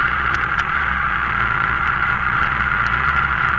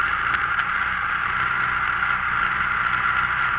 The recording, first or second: second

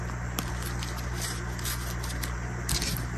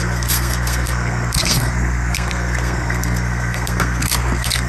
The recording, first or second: first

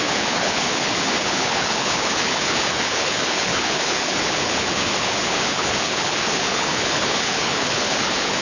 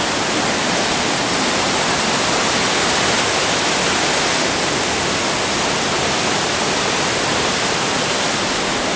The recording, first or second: second